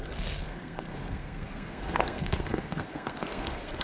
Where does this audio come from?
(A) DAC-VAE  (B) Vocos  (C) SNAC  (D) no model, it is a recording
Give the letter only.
C